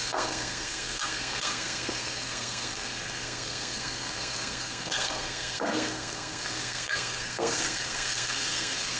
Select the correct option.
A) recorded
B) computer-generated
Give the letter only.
B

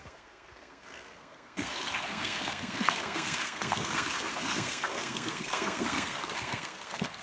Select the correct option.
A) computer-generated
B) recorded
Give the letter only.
A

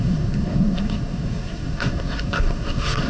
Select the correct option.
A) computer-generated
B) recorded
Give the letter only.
A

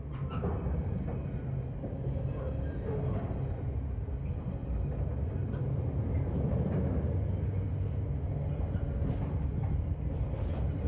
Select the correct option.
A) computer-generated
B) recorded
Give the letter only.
B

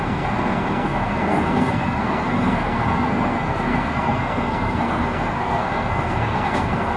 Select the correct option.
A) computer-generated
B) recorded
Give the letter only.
A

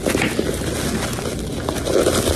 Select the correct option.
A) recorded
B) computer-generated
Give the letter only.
A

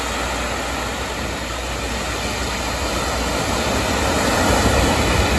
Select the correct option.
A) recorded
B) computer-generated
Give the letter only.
A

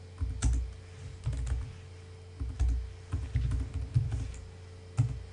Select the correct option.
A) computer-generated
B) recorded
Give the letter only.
B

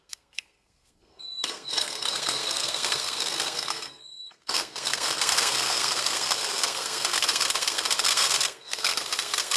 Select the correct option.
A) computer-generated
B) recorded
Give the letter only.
A